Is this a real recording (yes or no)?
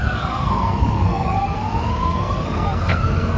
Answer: no